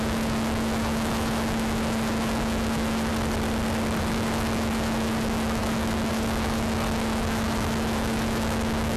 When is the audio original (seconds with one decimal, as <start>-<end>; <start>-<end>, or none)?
3.1-4.0